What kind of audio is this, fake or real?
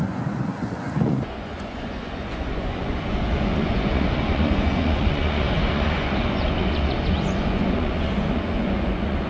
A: fake